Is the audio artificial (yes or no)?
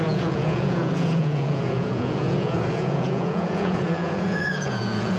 yes